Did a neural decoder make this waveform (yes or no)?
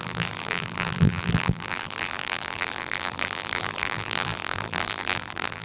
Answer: yes